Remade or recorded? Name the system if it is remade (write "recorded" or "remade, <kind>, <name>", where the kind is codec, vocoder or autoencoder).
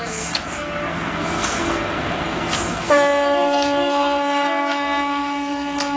remade, codec, SNAC